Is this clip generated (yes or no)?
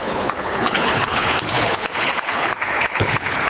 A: yes